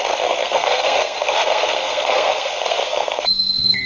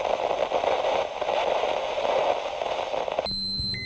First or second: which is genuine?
second